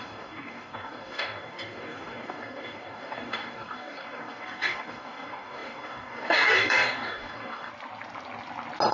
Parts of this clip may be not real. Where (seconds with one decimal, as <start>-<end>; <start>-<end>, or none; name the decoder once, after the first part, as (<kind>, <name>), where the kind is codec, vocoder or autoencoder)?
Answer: 0.0-7.7 (codec, DAC)